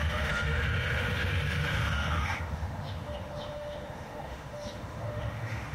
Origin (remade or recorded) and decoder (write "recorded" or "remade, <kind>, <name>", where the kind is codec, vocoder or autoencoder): remade, autoencoder, DAC-VAE